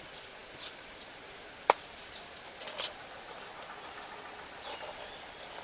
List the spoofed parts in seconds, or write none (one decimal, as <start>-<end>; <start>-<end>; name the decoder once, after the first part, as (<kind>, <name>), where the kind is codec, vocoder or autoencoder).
none